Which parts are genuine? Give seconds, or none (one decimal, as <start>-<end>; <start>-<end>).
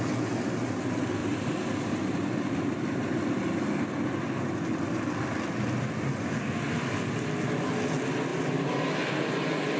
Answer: 0.0-1.2; 3.3-8.3; 8.8-9.8